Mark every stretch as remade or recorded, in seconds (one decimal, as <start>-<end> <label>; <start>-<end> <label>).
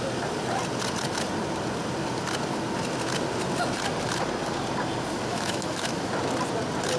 0.0-5.3 recorded; 5.3-6.1 remade; 6.1-7.0 recorded